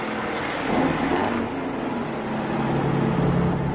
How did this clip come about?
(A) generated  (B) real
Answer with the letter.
B